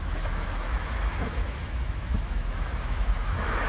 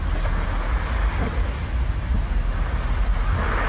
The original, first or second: second